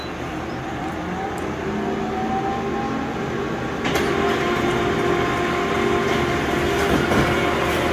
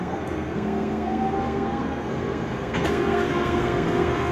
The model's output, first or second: second